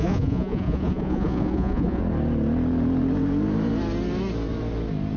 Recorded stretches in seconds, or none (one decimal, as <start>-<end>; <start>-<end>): 2.0-5.2